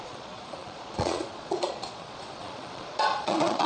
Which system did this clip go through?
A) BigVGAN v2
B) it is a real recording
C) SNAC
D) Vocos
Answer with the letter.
D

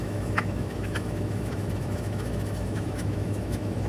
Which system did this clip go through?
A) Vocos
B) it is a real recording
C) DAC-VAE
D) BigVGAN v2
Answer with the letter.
C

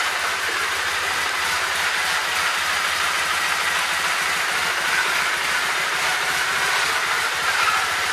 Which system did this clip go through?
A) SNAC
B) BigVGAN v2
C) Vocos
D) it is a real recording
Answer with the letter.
D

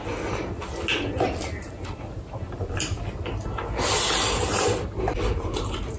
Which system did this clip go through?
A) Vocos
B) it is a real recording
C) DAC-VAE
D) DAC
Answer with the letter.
B